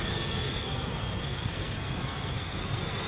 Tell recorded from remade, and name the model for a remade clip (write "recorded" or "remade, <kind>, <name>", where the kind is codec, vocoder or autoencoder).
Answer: remade, codec, SNAC